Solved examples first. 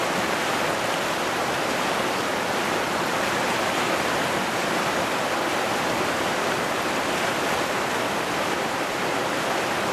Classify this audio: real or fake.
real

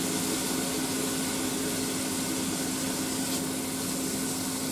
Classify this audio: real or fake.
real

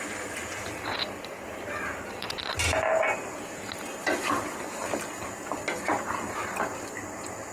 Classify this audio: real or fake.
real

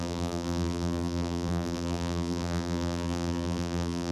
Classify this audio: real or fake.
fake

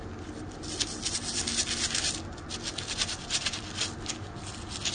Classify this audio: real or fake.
real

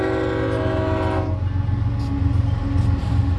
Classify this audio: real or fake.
real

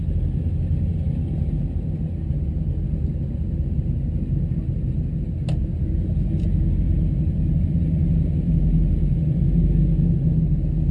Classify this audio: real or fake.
real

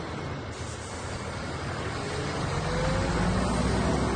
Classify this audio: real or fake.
real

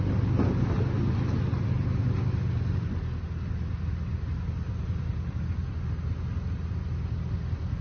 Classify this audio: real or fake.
real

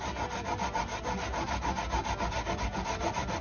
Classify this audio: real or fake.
real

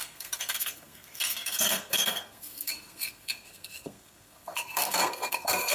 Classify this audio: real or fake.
fake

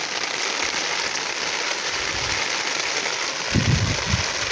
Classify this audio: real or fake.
real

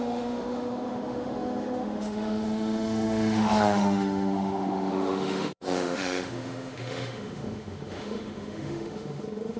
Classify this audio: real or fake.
fake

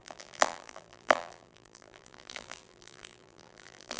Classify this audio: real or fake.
fake